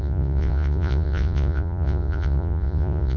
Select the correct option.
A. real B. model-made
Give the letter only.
B